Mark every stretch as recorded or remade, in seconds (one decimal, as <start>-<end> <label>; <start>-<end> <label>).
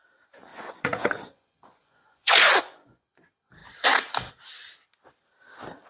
0.0-0.5 recorded; 0.5-3.1 remade; 3.1-5.9 recorded